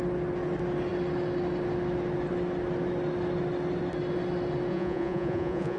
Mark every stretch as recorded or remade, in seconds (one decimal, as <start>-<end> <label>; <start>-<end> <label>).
0.0-4.7 recorded; 4.7-5.8 remade

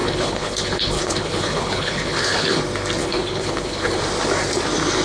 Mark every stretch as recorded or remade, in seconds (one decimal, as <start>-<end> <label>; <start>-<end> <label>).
0.0-2.6 remade; 2.6-3.0 recorded; 3.0-4.0 remade; 4.0-5.0 recorded